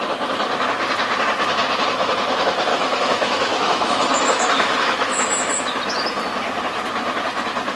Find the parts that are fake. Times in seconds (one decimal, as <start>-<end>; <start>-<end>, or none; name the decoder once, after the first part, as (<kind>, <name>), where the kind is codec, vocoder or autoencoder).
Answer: 2.7-5.6 (autoencoder, DAC-VAE)